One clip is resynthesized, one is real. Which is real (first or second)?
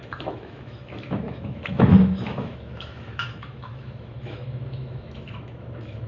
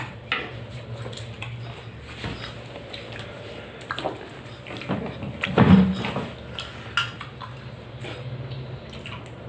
second